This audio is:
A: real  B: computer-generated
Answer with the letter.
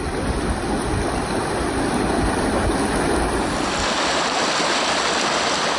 A